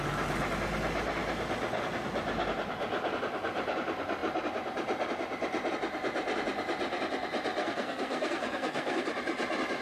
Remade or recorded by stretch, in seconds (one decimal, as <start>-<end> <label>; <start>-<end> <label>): 0.0-7.6 recorded; 7.6-9.1 remade; 9.1-9.8 recorded